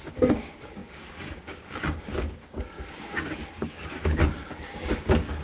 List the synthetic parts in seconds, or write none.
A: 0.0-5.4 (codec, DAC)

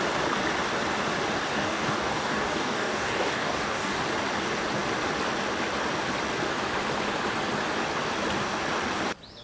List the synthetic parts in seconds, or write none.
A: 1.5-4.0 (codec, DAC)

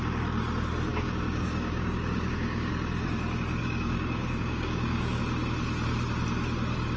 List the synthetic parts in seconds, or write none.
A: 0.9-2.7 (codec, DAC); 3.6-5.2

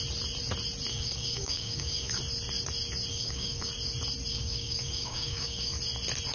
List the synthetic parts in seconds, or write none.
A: 0.9-2.2 (codec, DAC); 3.1-3.7; 4.3-5.8

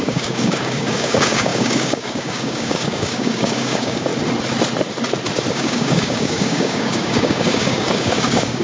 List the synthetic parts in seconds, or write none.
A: 0.0-4.1 (codec, DAC); 5.5-8.6

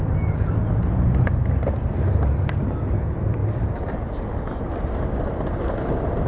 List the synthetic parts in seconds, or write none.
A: none

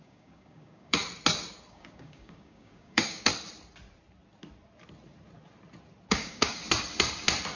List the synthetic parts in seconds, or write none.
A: 0.0-1.0 (codec, DAC); 1.7-3.3; 6.1-6.6

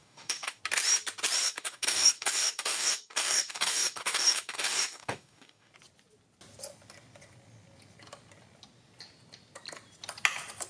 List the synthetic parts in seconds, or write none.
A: 0.0-0.6 (codec, DAC); 1.4-5.7